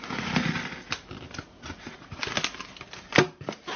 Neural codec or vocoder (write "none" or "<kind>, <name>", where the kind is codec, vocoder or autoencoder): none